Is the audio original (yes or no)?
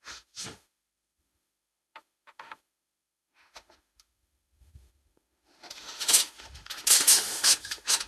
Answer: no